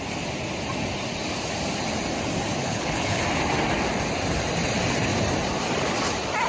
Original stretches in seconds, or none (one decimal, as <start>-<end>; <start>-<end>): 0.0-2.6; 3.2-6.5